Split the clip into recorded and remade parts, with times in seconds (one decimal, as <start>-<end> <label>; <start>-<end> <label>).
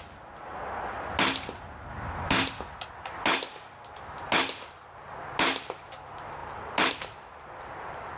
0.0-8.2 recorded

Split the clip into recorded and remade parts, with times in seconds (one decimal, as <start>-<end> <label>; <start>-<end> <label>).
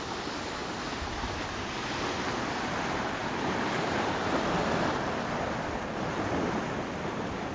0.0-7.5 recorded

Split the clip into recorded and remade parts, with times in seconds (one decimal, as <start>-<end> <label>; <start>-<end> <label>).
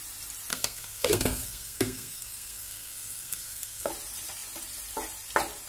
0.0-0.5 recorded; 0.5-3.9 remade; 3.9-5.7 recorded